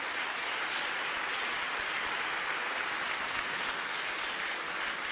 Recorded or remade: recorded